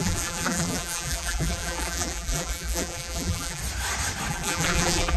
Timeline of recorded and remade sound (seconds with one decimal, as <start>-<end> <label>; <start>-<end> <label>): 0.0-3.6 remade; 3.6-4.3 recorded; 4.3-5.2 remade